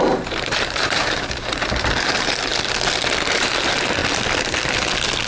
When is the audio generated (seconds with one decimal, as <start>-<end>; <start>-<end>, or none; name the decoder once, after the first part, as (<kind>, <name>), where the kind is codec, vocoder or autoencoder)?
0.0-2.5 (vocoder, BigVGAN v2); 3.3-4.0